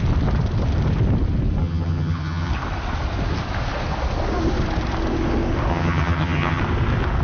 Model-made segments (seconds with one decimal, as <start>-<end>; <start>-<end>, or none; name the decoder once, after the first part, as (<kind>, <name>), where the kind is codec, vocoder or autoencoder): 1.6-2.5 (vocoder, HiFi-GAN); 5.7-6.6